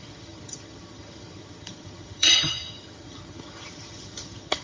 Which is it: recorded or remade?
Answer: remade